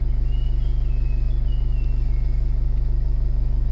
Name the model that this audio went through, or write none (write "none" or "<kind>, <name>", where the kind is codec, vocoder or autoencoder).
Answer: none